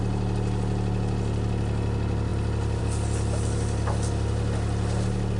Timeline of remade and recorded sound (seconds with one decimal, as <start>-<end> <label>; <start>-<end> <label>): 0.0-5.4 recorded